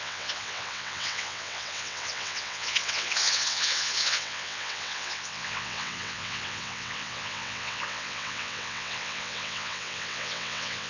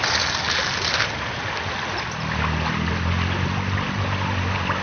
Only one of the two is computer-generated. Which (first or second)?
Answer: first